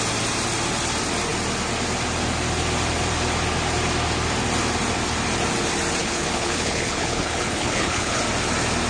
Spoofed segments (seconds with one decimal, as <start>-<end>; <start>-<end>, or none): 6.0-8.2